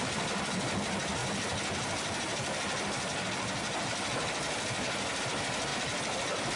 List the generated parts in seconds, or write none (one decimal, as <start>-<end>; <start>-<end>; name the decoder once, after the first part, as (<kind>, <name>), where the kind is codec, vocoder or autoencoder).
0.0-1.2 (vocoder, BigVGAN v2); 5.2-5.7